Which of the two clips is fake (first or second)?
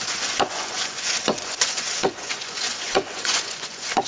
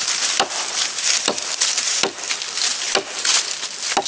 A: first